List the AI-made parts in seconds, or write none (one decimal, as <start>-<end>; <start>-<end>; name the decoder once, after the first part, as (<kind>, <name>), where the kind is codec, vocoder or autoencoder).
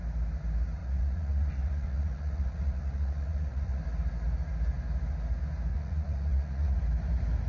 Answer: 0.8-3.8 (vocoder, Vocos); 5.7-6.8